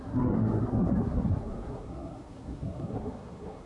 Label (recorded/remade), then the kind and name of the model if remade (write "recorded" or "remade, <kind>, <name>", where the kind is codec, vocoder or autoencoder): remade, codec, SNAC